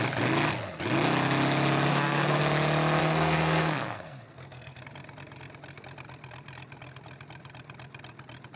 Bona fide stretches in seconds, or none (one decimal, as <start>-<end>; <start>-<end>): 0.0-1.9; 2.4-3.0; 4.8-8.6